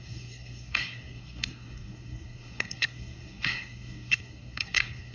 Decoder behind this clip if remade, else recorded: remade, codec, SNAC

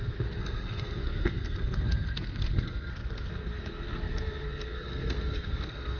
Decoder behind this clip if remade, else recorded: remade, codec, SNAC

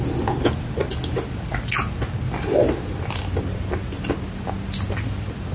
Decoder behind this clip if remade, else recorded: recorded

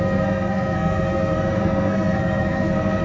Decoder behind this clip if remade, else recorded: remade, codec, SNAC